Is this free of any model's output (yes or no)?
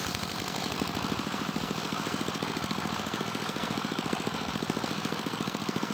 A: no